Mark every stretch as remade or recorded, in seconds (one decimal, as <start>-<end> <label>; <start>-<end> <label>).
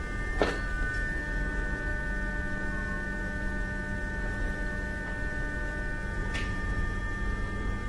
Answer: 0.0-6.2 recorded; 6.2-7.0 remade; 7.0-7.9 recorded